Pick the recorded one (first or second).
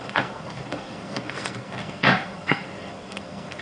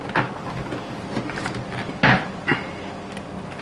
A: second